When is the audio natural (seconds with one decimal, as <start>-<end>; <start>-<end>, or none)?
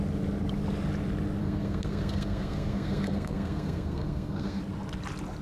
0.0-1.4; 4.6-5.4